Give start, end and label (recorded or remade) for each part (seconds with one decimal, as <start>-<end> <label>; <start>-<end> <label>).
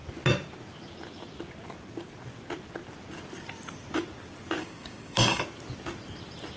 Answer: 0.0-4.6 recorded; 4.6-5.4 remade; 5.4-6.6 recorded